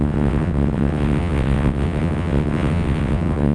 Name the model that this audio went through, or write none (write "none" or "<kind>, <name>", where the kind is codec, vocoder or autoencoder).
vocoder, WaveNeXt